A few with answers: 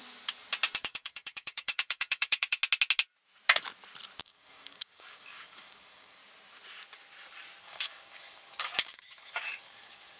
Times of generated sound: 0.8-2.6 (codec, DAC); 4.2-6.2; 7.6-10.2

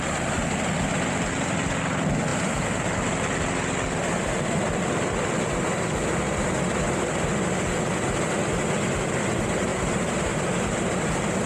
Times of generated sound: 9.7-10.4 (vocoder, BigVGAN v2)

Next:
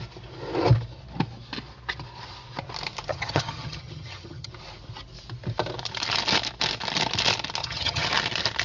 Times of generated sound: 3.1-4.5 (vocoder, HiFi-GAN); 7.6-8.1

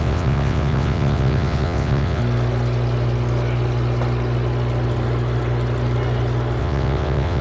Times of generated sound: 0.0-2.2 (vocoder, WaveNeXt); 6.6-7.4

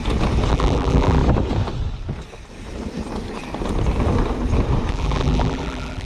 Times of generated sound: 0.5-1.2 (vocoder, BigVGAN v2); 4.9-6.1

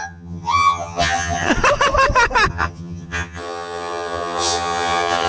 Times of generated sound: 0.0-1.5 (vocoder, HiFi-GAN); 2.5-5.3

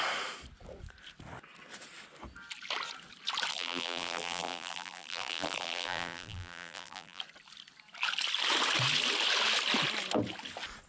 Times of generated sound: 3.5-7.2 (vocoder, BigVGAN v2)

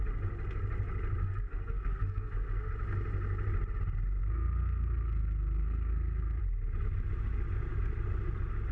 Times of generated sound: 1.2-2.7 (codec, SNAC); 4.2-6.4